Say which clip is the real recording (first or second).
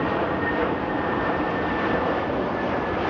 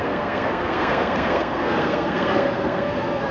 first